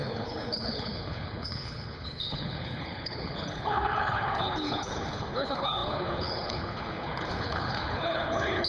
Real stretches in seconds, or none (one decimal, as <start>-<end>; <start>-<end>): none